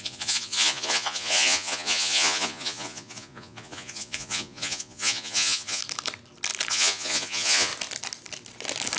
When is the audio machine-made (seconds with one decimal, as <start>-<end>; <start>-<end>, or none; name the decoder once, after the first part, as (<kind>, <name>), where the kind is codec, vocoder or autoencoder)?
0.0-5.8 (vocoder, Vocos); 6.7-7.7